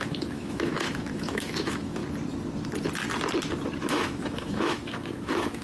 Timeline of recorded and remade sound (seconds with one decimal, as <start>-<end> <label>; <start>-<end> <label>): 0.0-2.0 remade; 2.0-3.8 recorded; 3.8-5.6 remade